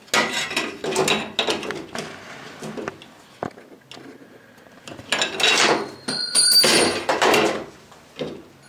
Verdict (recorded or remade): recorded